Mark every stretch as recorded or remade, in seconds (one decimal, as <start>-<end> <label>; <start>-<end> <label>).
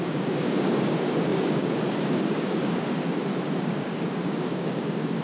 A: 0.0-3.0 remade; 3.0-3.6 recorded; 3.6-5.2 remade